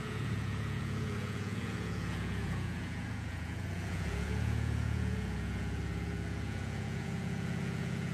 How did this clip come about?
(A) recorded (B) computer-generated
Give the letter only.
B